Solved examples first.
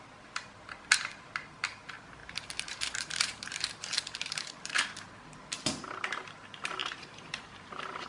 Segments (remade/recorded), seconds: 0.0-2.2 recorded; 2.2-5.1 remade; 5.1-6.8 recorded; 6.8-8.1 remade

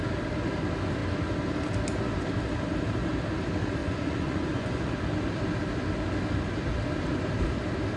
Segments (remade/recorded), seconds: 0.0-3.8 recorded; 3.8-4.9 remade; 4.9-8.0 recorded

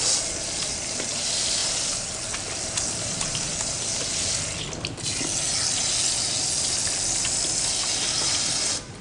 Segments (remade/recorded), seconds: 0.0-9.0 recorded

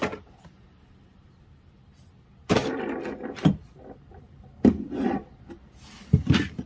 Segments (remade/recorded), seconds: 0.0-2.6 recorded; 2.6-6.2 remade; 6.2-6.7 recorded

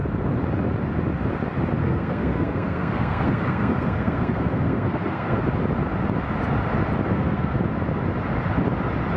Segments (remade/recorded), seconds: 0.0-1.8 recorded; 1.8-5.4 remade; 5.4-7.1 recorded; 7.1-7.6 remade; 7.6-9.2 recorded